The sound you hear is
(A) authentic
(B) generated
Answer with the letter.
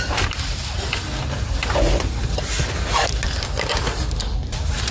A